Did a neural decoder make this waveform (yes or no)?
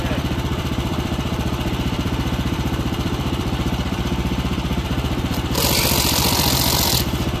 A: yes